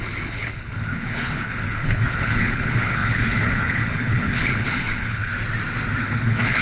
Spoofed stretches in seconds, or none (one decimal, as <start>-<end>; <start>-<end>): 0.0-5.3; 6.0-6.6